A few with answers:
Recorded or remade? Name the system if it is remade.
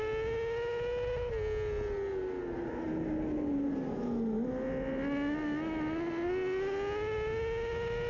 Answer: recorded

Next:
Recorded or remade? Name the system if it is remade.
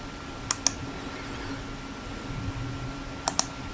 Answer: recorded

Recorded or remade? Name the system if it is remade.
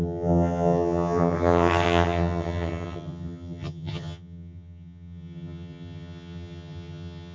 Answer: remade, vocoder, HiFi-GAN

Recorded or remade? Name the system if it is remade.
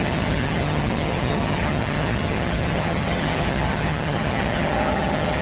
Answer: remade, vocoder, HiFi-GAN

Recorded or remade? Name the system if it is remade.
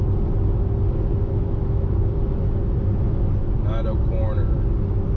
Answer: recorded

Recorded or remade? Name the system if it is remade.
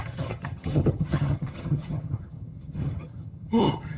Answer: remade, vocoder, HiFi-GAN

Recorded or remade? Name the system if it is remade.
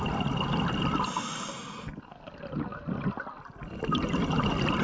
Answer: recorded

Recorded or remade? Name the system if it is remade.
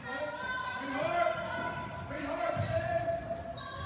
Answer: recorded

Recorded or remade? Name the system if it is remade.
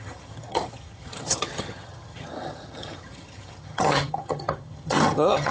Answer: remade, vocoder, HiFi-GAN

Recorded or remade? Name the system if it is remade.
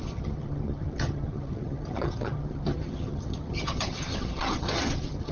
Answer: remade, vocoder, HiFi-GAN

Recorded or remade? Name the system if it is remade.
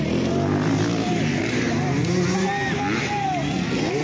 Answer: recorded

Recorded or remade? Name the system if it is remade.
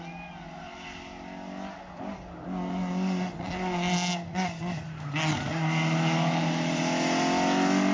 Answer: recorded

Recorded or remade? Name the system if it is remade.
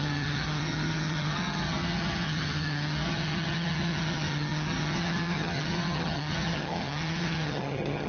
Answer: remade, vocoder, HiFi-GAN